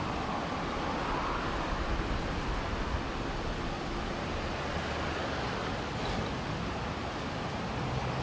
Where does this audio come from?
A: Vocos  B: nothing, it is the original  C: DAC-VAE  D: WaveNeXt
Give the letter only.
B